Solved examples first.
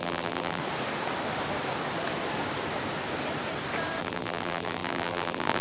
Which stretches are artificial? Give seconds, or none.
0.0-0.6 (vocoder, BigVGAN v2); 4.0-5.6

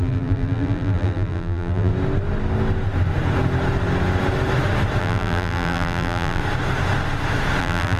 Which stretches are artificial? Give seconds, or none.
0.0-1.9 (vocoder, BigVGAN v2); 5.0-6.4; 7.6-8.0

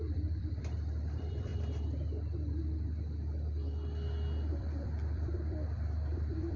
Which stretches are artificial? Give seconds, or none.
0.0-1.5 (vocoder, BigVGAN v2); 4.5-6.6